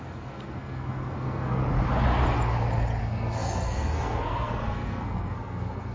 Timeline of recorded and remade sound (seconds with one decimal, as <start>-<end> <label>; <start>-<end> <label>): 0.0-1.6 remade; 1.6-3.0 recorded; 3.0-5.9 remade